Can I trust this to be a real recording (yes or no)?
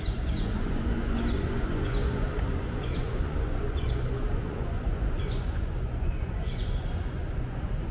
no